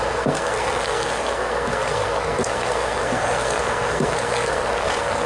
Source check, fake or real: fake